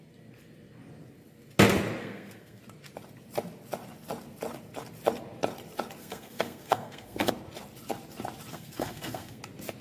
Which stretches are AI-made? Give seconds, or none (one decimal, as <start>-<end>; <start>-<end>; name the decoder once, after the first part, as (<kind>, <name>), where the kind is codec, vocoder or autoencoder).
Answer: 2.0-2.6 (codec, SNAC); 6.0-7.3; 8.5-9.4